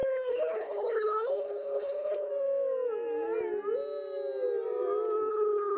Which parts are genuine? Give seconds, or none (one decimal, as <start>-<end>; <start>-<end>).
2.3-5.3

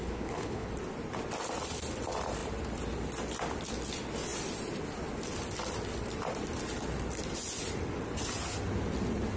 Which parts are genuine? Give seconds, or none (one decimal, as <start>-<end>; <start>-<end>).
0.7-9.4

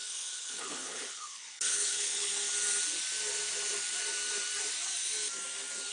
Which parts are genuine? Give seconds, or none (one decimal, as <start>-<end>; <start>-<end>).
2.3-5.9

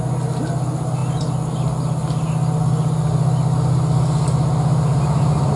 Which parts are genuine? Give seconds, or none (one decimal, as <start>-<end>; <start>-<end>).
0.0-5.6